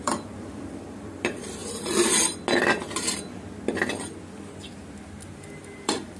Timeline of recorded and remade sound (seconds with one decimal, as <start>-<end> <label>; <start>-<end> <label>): 0.0-1.6 remade; 1.6-5.3 recorded; 5.3-6.2 remade